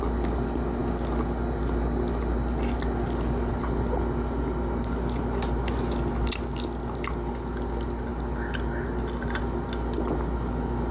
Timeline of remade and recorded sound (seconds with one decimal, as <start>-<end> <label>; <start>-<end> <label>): 0.0-10.9 recorded